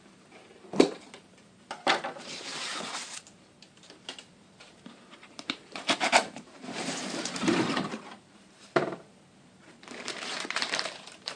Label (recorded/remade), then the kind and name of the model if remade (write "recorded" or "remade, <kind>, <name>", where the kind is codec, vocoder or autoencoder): remade, vocoder, BigVGAN v2